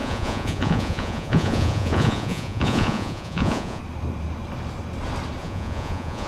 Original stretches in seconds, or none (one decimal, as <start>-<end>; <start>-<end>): 3.8-5.4